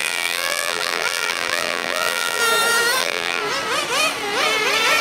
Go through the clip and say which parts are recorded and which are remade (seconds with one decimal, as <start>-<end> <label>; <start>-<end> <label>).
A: 0.0-2.4 remade; 2.4-3.0 recorded; 3.0-3.4 remade; 3.4-5.0 recorded